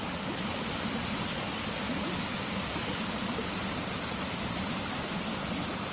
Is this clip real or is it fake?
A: real